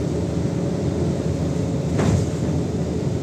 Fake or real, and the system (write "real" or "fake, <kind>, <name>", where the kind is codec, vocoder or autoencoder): real